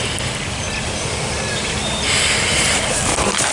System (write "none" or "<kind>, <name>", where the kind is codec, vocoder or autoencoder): none